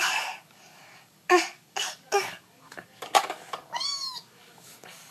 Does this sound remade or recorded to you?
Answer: remade